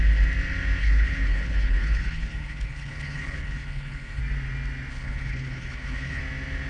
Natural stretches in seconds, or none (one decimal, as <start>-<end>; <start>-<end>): 0.0-0.8; 4.2-4.9; 6.2-6.7